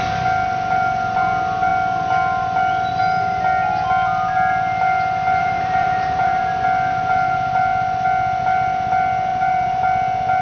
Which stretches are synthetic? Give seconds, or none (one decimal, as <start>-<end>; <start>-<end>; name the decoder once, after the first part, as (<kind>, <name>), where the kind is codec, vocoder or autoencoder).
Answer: 5.4-6.4 (vocoder, BigVGAN v2); 9.3-9.8